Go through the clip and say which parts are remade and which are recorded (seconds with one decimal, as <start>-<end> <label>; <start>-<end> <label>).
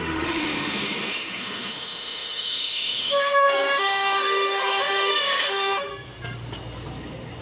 0.0-5.9 remade; 5.9-7.4 recorded